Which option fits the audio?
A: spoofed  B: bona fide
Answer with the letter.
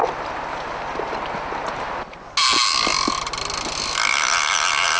B